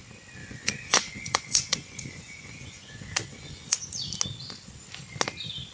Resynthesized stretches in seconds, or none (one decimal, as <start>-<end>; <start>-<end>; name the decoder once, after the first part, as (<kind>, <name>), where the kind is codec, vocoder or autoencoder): 0.4-3.8 (vocoder, Vocos)